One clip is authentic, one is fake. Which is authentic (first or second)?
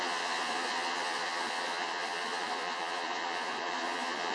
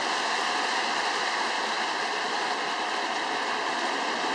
second